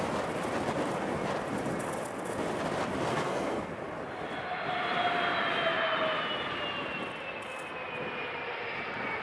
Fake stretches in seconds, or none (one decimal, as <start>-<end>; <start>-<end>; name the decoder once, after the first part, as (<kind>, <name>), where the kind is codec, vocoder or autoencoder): 3.1-3.7 (codec, SNAC)